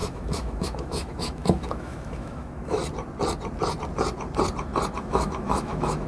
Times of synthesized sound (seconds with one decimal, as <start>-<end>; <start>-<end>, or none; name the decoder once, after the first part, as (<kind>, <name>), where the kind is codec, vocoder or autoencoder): 0.0-2.8 (autoencoder, DAC-VAE); 5.0-6.1